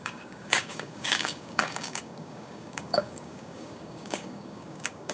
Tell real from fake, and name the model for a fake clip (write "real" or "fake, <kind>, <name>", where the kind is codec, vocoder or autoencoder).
fake, codec, DAC